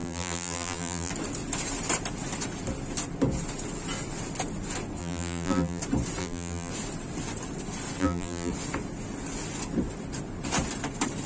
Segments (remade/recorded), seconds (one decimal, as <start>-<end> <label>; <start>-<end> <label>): 0.0-1.1 remade; 1.1-5.0 recorded; 5.0-5.8 remade; 5.8-6.2 recorded; 6.2-6.7 remade; 6.7-8.0 recorded; 8.0-8.5 remade; 8.5-11.3 recorded